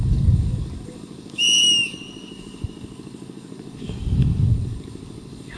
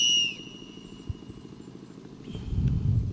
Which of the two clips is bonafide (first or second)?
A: second